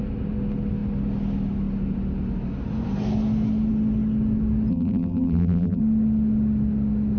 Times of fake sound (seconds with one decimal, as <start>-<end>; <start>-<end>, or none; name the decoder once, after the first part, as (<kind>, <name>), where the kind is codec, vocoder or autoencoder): 4.7-5.8 (vocoder, BigVGAN v2)